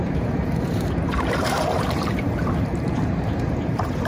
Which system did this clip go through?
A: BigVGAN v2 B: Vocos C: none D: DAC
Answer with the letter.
A